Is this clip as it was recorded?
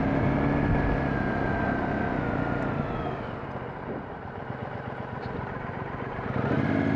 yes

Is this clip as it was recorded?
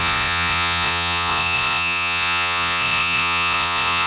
no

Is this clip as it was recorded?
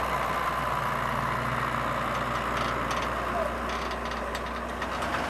yes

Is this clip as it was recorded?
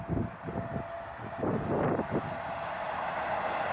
yes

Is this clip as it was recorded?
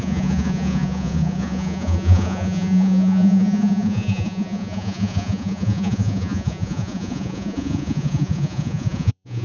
no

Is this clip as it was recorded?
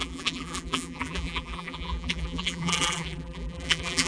no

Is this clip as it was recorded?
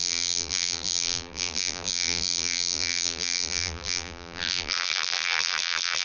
no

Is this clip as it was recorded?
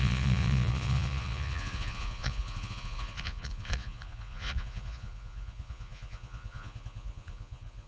no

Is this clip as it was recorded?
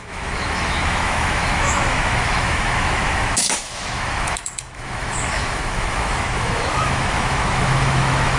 no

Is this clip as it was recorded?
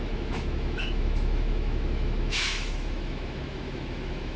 no